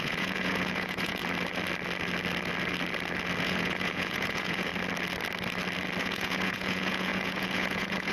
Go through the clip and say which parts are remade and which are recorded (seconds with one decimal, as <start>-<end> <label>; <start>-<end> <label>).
0.0-1.2 remade; 1.2-3.4 recorded; 3.4-4.7 remade; 4.7-6.0 recorded; 6.0-8.1 remade